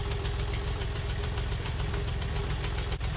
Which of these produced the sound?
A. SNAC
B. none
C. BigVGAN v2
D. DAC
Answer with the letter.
C